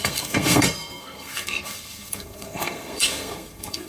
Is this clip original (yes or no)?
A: no